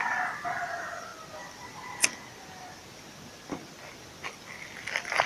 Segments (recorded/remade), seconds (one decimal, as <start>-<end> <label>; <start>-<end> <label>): 0.0-5.3 recorded